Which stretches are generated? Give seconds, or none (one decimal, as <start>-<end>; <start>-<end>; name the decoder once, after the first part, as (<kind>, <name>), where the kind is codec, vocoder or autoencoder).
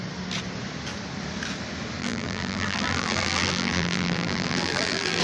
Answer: 2.0-5.2 (vocoder, BigVGAN v2)